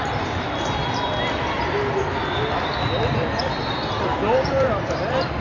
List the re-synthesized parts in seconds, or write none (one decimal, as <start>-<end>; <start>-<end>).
0.0-0.8; 4.0-5.4